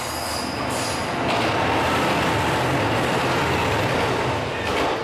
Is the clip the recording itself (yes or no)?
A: yes